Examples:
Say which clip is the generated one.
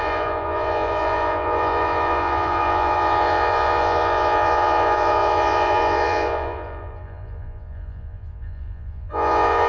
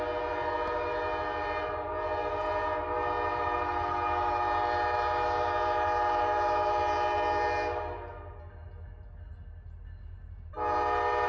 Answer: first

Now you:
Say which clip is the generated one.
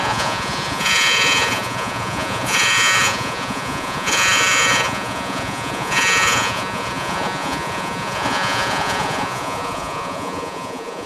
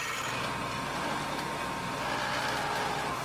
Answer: first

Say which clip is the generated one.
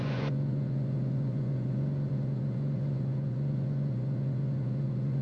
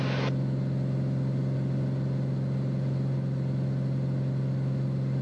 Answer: first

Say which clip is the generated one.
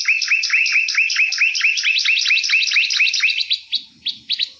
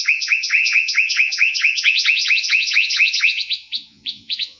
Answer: second